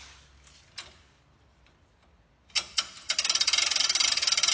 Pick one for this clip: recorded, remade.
recorded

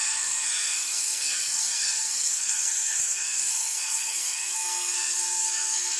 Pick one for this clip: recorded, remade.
remade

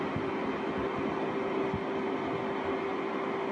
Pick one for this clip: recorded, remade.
recorded